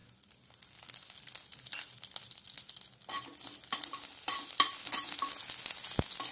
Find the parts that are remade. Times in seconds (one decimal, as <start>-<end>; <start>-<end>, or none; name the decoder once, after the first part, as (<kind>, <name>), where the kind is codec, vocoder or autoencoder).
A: none